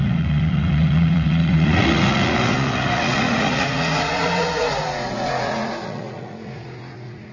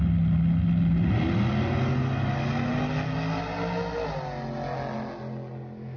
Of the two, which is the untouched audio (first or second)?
second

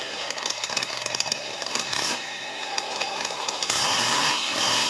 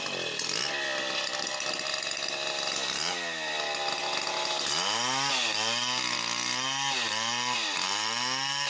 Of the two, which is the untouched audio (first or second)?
second